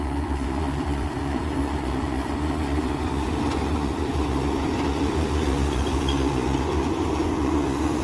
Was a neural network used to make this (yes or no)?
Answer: yes